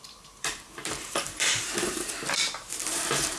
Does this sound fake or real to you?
fake